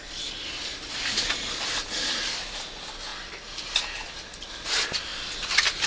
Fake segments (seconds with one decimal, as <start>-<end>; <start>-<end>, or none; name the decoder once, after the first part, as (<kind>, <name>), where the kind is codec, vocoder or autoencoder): none